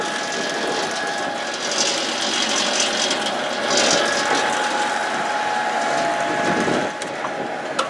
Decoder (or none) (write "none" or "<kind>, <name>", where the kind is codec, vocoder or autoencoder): none